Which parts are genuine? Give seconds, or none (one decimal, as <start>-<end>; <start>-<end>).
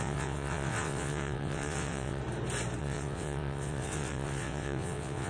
2.2-2.8